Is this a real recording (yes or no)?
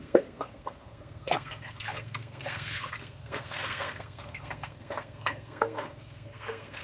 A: no